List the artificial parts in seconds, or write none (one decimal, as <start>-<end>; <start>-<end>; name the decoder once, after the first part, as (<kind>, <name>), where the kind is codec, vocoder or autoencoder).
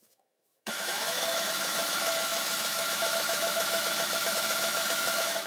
0.0-5.5 (autoencoder, DAC-VAE)